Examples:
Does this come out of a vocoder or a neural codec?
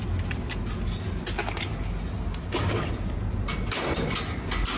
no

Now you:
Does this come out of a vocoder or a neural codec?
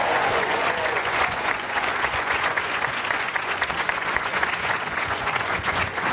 yes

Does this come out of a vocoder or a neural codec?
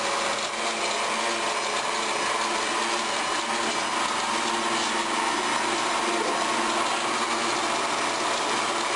no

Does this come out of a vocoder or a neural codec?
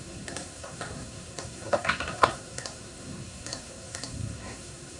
yes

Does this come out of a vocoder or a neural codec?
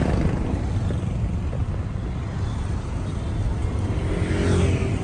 no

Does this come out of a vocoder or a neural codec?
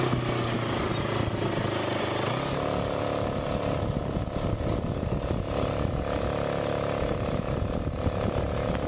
no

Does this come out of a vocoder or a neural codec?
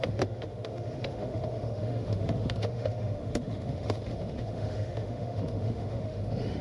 yes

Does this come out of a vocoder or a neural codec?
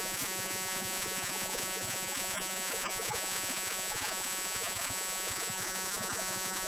yes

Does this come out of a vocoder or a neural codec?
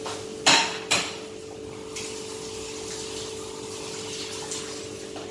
no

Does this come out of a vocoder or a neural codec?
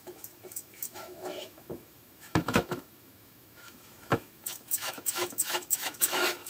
yes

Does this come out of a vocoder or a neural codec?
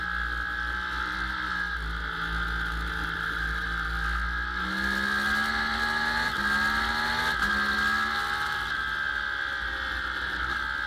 no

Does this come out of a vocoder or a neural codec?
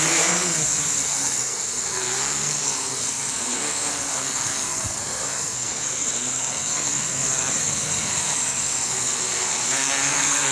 yes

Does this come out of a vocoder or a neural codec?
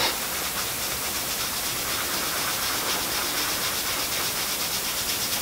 no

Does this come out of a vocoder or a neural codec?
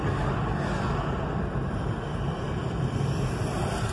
no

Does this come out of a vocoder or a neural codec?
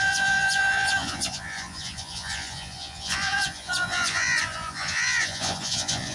yes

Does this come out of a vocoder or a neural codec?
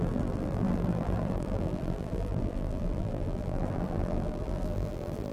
yes